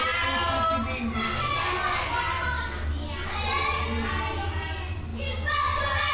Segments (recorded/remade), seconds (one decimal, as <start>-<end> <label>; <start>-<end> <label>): 0.0-6.1 recorded